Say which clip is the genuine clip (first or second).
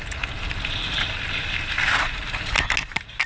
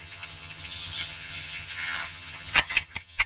first